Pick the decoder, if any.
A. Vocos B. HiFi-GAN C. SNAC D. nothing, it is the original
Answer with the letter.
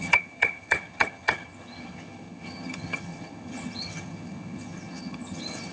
B